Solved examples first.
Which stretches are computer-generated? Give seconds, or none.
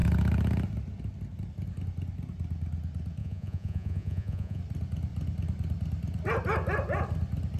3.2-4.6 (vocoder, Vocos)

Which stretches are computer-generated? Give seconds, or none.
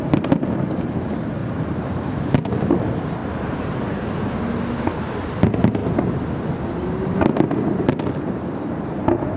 1.4-2.3 (vocoder, BigVGAN v2)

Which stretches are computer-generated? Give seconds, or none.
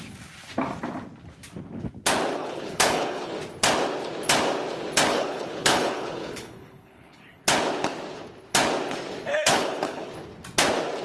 2.4-3.3 (codec, HILCodec); 5.1-7.4; 9.3-10.1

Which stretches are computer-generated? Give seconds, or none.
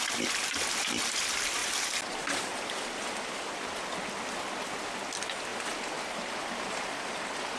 none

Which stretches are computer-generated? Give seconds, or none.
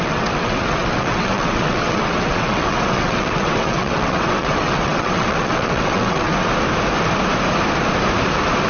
0.0-6.3 (vocoder, WaveNeXt)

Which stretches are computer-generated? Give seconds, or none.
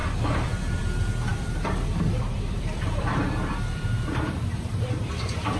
0.0-0.8 (vocoder, BigVGAN v2); 1.3-4.7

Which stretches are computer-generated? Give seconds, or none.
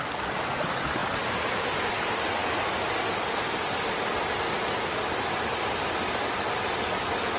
none